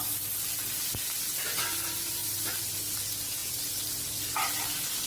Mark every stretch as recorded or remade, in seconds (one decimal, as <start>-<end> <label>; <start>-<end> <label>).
0.0-5.1 recorded